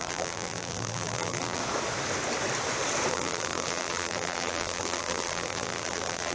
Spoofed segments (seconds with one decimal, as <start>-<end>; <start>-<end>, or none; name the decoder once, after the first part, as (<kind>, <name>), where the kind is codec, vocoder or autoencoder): 0.0-1.6 (vocoder, BigVGAN v2); 3.1-6.3